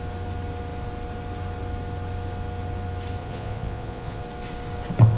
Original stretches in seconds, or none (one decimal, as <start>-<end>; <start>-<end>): 0.0-3.2; 4.2-5.2